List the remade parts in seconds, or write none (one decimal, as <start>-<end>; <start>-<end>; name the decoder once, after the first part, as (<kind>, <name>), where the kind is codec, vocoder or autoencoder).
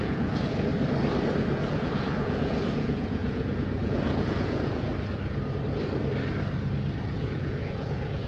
0.0-0.7 (vocoder, Vocos); 1.4-4.9; 7.0-8.3